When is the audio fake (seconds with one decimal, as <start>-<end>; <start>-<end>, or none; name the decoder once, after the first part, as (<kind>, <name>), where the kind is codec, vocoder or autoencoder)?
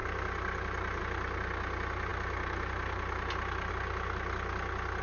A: none